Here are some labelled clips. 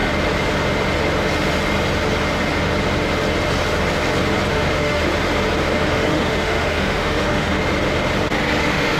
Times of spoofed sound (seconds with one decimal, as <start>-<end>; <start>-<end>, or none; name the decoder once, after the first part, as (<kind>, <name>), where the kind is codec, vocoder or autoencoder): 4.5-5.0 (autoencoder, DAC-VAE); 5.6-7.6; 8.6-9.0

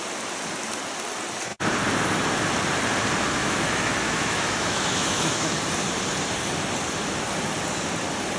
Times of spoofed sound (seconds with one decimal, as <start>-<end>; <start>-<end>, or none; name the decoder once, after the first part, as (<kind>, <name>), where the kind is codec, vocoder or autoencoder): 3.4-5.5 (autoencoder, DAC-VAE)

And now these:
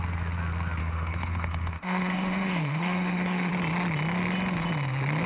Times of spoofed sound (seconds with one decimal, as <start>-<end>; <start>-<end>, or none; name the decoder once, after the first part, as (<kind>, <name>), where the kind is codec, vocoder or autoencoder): 0.8-3.5 (autoencoder, DAC-VAE)

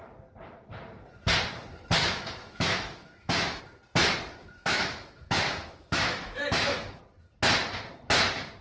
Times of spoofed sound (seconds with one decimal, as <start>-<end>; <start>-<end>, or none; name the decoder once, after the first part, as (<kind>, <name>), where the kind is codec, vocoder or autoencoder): 2.0-3.6 (autoencoder, DAC-VAE); 4.4-7.0

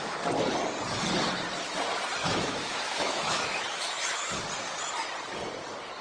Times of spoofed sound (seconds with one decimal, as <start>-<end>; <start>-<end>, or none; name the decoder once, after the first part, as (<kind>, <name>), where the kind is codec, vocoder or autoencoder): 2.2-4.4 (autoencoder, DAC-VAE)

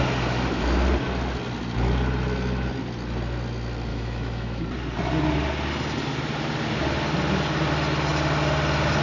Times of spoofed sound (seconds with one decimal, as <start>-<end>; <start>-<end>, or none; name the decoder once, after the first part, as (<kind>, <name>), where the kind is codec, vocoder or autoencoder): 3.9-4.6 (autoencoder, DAC-VAE)

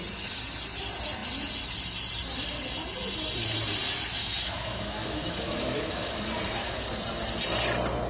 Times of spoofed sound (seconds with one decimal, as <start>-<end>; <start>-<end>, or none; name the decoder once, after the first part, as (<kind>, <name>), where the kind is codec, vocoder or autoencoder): 4.2-6.2 (autoencoder, DAC-VAE)